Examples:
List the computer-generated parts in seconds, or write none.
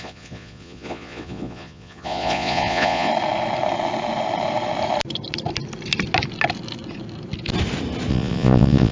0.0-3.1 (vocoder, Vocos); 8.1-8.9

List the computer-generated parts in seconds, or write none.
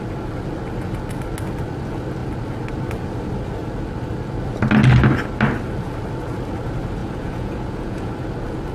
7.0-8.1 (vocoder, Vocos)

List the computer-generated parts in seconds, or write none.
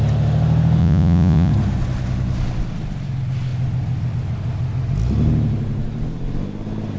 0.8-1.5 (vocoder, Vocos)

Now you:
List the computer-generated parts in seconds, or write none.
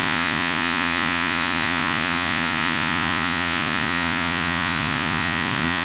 0.0-5.8 (vocoder, Vocos)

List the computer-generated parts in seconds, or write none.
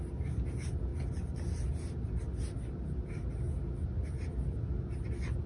none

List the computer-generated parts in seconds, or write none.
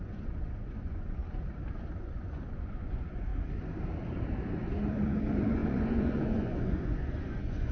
0.0-1.2 (vocoder, Vocos); 2.0-3.3; 4.9-7.7